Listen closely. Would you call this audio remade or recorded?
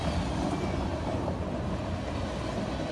recorded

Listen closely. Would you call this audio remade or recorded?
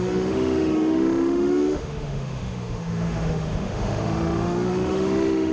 remade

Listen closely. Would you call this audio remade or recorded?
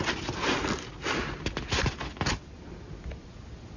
recorded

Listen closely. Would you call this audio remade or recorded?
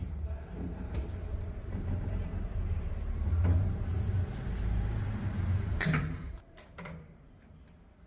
remade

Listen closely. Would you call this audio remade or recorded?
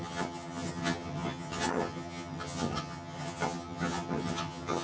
remade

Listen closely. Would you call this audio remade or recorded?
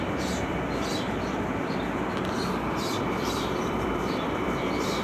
remade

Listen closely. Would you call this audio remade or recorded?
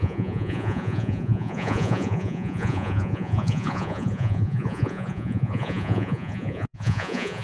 remade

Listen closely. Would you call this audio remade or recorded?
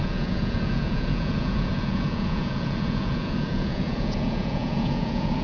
remade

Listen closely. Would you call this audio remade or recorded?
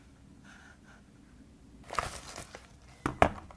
recorded